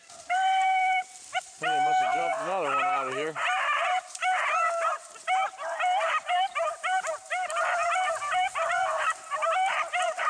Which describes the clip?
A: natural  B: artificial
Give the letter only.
B